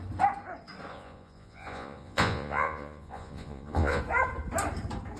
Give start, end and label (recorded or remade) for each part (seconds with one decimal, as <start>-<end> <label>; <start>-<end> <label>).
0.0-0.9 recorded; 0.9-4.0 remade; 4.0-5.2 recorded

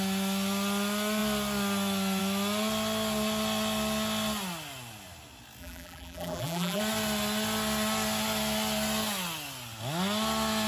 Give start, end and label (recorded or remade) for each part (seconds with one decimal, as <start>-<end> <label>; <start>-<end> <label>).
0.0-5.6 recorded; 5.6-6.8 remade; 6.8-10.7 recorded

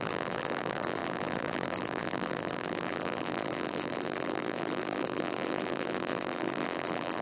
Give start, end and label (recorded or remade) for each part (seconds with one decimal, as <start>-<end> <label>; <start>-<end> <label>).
0.0-7.2 remade

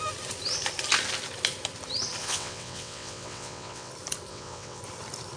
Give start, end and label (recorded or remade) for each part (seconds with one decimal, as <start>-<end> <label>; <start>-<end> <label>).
0.0-2.2 recorded; 2.2-3.9 remade; 3.9-4.3 recorded; 4.3-4.8 remade; 4.8-5.4 recorded

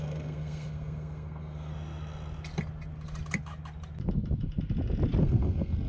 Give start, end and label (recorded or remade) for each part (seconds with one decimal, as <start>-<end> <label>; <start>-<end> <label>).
0.0-1.7 remade; 1.7-5.2 recorded; 5.2-5.9 remade

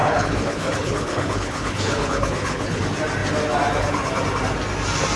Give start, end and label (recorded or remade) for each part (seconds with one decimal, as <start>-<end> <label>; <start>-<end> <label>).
0.0-2.8 remade; 2.8-5.2 recorded